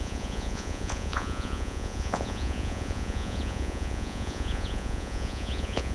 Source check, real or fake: fake